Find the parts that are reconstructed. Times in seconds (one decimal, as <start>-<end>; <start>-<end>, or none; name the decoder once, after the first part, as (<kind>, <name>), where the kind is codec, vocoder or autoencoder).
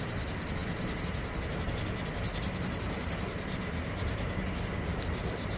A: none